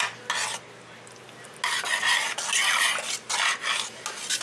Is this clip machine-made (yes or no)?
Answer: no